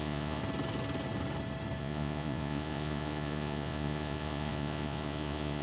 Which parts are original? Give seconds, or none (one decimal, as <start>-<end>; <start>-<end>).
0.4-1.8